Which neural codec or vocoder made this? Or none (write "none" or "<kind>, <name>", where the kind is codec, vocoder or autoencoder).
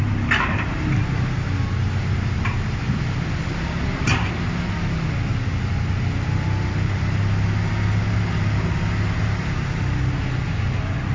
none